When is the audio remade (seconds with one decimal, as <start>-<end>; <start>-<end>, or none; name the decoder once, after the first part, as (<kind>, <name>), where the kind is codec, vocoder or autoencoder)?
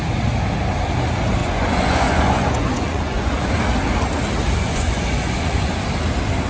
1.4-3.5 (vocoder, Vocos); 4.6-5.7